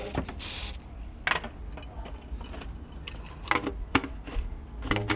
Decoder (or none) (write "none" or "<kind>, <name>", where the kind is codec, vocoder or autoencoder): none